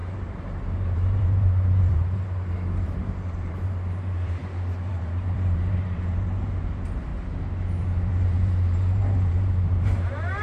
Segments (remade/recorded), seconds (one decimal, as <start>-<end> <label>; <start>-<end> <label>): 0.0-4.4 remade; 4.4-4.9 recorded; 4.9-7.1 remade; 7.1-7.8 recorded; 7.8-10.4 remade